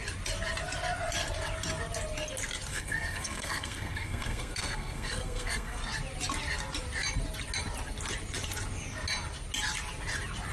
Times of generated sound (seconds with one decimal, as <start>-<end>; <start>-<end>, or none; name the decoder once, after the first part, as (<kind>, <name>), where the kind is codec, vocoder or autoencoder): 2.7-5.8 (codec, SNAC)